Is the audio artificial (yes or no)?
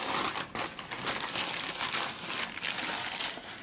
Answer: no